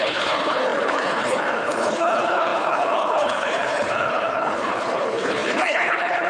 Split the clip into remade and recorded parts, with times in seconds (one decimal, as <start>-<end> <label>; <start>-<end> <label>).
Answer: 0.0-6.3 remade